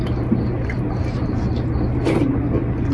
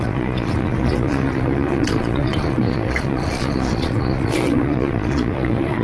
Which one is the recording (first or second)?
first